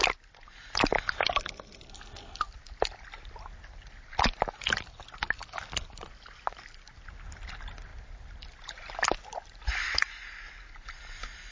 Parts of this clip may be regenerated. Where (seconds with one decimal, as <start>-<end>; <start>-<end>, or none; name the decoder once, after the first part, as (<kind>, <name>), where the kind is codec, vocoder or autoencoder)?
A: none